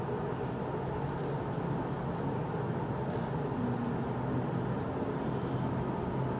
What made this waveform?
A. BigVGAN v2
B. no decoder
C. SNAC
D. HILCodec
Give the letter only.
B